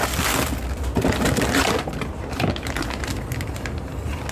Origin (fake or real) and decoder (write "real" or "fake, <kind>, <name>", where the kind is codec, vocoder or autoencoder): real